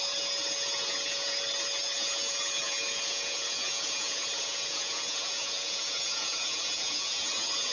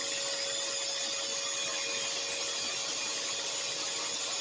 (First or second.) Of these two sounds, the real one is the second